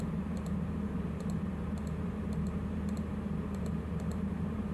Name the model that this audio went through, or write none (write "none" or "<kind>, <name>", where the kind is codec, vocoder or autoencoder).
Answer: vocoder, BigVGAN v2